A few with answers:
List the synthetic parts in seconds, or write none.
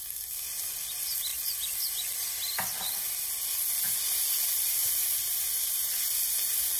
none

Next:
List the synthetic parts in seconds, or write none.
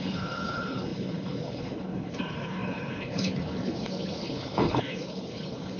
0.0-5.8 (codec, HILCodec)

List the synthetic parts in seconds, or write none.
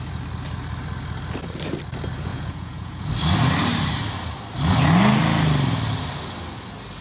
2.3-3.1 (vocoder, Vocos)